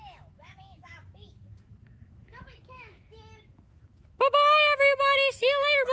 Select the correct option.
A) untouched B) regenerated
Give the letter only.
B